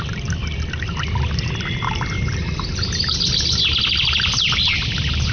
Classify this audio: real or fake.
real